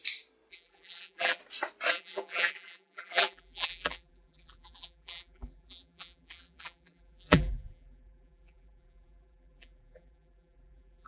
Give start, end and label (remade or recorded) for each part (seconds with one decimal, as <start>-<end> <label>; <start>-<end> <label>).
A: 0.0-0.5 recorded; 0.5-1.4 remade; 1.4-1.9 recorded; 1.9-11.1 remade